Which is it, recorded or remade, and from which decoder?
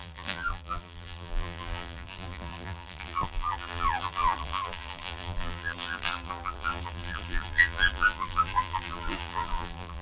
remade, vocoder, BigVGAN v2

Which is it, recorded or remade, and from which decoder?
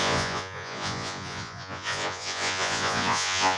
remade, vocoder, Vocos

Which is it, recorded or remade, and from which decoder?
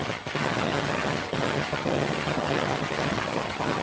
remade, vocoder, HiFi-GAN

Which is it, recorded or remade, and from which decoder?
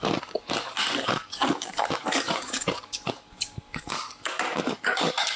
remade, codec, DAC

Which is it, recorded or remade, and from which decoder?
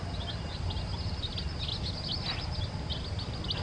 recorded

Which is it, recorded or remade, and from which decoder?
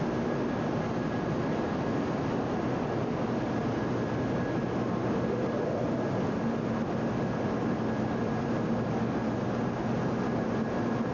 recorded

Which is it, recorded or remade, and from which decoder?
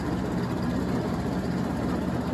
recorded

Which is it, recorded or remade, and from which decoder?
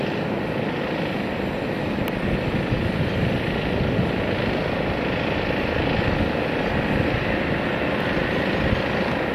recorded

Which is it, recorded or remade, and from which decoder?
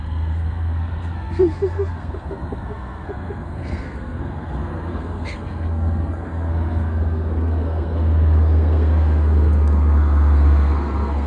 remade, codec, SNAC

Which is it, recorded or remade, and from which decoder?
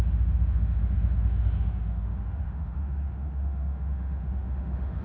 remade, autoencoder, DAC-VAE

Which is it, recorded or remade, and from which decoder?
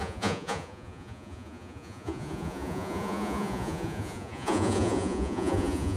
remade, vocoder, Vocos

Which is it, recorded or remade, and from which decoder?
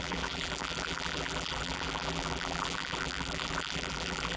remade, vocoder, BigVGAN v2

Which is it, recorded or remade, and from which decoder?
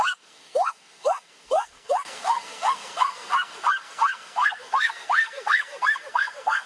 remade, codec, SNAC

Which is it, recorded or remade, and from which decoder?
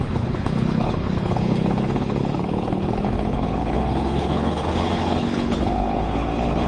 remade, codec, HILCodec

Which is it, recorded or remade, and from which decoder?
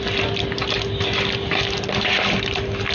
recorded